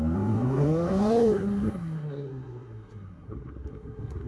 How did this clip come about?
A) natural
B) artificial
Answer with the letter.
B